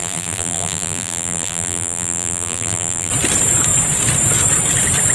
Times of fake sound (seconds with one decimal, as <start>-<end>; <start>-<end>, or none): 0.0-3.1